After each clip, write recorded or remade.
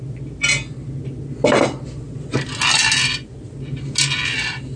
recorded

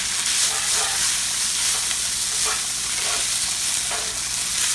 recorded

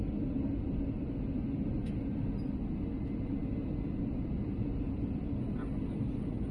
recorded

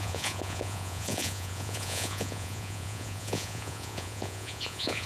remade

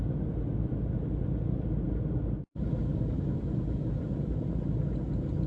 recorded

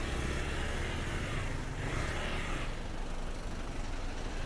recorded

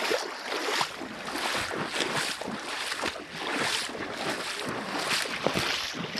recorded